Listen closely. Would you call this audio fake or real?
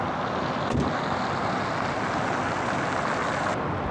real